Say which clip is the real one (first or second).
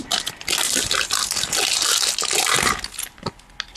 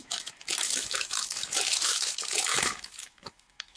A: first